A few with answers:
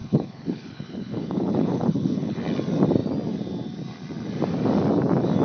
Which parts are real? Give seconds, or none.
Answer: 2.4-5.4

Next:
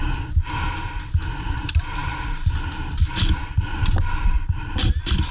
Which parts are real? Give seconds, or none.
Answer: 0.0-5.3

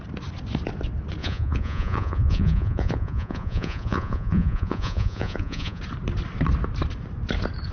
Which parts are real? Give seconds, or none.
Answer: 0.0-1.2; 5.8-7.7

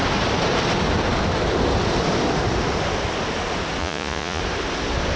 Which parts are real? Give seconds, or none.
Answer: 0.0-3.8; 4.4-5.2

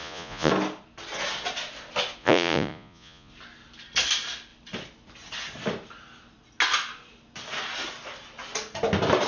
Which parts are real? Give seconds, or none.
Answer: 0.5-2.2; 3.3-9.3